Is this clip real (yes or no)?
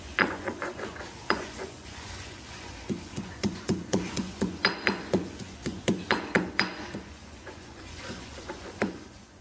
no